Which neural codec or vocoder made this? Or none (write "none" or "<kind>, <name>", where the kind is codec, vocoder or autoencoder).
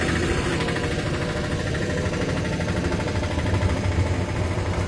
none